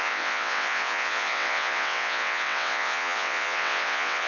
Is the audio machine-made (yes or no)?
yes